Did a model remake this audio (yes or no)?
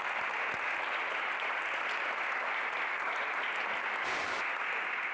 no